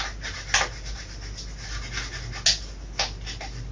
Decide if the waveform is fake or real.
real